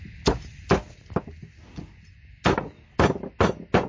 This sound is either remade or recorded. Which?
recorded